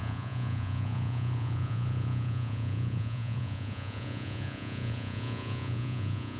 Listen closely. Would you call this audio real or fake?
fake